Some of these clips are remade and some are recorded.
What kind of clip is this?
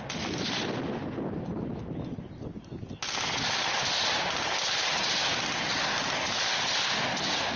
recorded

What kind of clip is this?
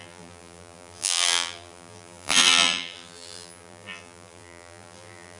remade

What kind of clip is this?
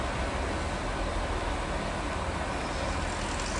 recorded